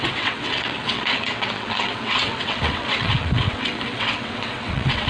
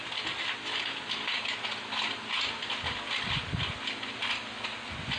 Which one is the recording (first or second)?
second